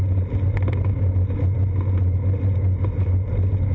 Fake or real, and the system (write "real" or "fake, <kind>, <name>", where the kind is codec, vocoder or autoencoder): real